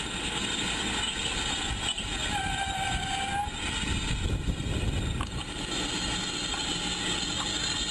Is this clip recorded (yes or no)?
yes